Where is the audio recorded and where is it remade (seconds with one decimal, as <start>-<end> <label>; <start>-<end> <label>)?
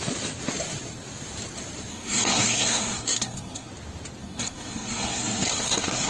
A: 0.0-1.9 recorded; 1.9-3.7 remade; 3.7-4.2 recorded; 4.2-6.1 remade